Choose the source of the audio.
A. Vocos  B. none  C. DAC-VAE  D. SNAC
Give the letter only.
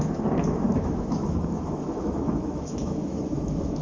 C